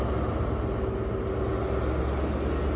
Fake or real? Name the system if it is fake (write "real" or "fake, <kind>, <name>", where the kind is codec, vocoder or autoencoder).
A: real